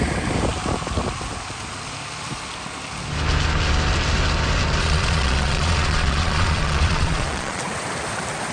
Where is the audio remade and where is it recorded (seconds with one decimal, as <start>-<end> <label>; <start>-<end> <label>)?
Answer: 0.0-4.8 recorded; 4.8-7.6 remade; 7.6-8.5 recorded